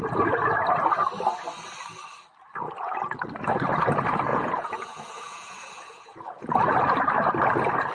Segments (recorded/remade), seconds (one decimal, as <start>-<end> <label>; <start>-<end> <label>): 0.0-4.3 recorded; 4.3-6.6 remade; 6.6-7.9 recorded